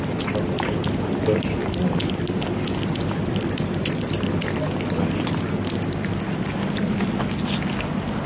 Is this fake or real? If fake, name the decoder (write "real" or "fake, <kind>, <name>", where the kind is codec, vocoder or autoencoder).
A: real